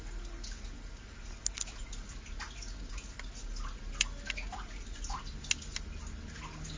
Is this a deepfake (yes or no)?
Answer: no